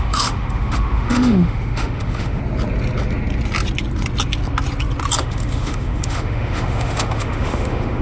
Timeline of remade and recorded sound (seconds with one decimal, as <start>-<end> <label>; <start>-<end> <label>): 0.0-2.4 remade; 2.4-5.2 recorded; 5.2-8.0 remade